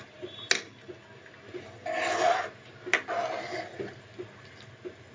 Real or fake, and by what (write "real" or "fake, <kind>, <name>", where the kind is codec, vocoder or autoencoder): real